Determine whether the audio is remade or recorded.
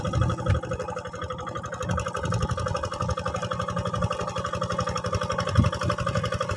recorded